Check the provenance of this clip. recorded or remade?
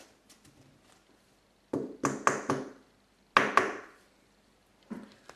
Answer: recorded